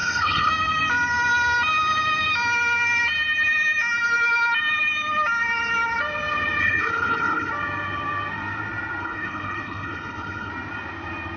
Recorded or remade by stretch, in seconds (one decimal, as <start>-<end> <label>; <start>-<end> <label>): 0.0-0.5 remade; 0.5-6.6 recorded; 6.6-7.5 remade; 7.5-9.0 recorded; 9.0-10.5 remade; 10.5-11.4 recorded